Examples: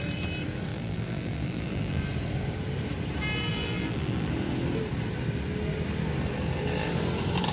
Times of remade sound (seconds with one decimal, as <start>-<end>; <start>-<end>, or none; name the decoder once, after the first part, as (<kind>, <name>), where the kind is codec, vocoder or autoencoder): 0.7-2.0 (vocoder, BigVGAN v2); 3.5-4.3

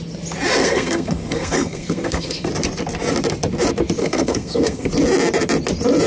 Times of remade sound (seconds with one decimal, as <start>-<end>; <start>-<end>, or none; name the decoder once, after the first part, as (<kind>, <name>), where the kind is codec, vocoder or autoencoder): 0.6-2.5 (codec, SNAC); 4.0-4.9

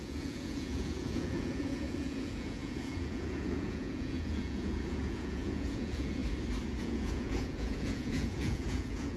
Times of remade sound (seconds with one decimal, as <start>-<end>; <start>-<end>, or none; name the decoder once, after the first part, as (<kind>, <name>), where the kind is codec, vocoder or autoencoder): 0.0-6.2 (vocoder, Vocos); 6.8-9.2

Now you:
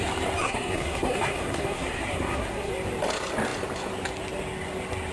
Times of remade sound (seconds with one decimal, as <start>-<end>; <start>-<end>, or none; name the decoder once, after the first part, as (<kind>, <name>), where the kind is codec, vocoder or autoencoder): 0.4-2.7 (codec, SNAC)

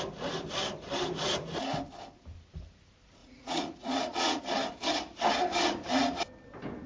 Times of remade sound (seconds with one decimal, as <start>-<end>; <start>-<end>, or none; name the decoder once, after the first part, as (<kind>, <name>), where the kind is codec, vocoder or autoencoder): 3.2-4.4 (vocoder, Vocos)